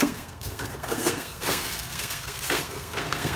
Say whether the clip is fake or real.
fake